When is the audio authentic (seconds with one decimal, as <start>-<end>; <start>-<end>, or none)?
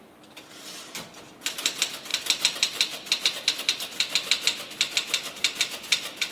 0.0-6.3